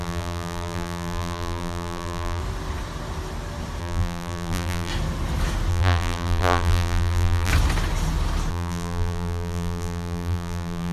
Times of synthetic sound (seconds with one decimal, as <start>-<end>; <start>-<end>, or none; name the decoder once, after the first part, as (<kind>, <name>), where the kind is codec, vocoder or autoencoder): 0.0-2.4 (vocoder, BigVGAN v2); 3.8-4.9; 5.7-7.5; 8.5-10.9